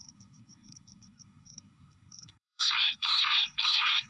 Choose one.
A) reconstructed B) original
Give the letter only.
A